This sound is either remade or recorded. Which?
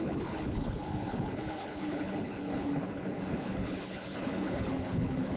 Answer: remade